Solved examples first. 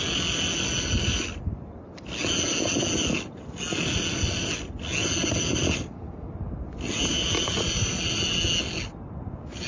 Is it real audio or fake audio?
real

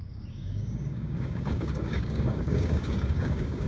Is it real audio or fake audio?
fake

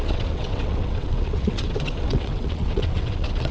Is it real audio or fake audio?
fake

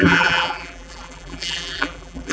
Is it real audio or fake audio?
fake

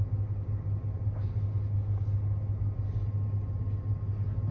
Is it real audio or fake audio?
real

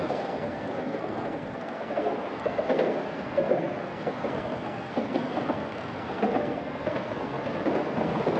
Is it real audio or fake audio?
fake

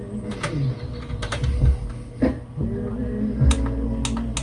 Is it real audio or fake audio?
real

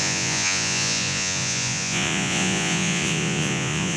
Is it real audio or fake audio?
fake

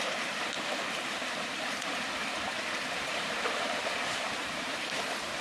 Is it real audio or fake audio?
fake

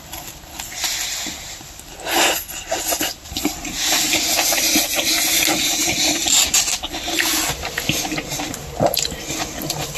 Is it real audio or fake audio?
real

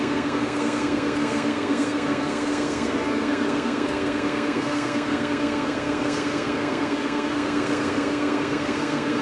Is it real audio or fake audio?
fake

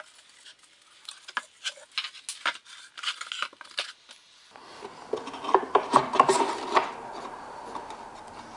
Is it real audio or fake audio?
real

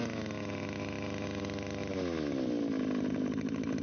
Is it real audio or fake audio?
real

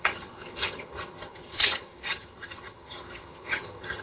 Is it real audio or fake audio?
fake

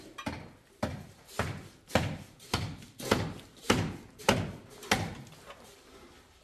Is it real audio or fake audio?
real